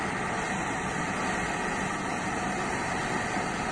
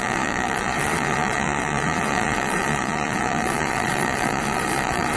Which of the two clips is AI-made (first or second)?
second